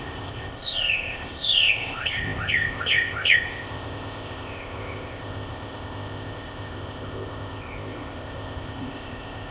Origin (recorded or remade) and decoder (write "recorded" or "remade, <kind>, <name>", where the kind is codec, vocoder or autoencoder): remade, codec, ZipCodec